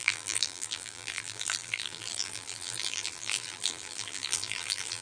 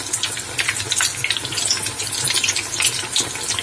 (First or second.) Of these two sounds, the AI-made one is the first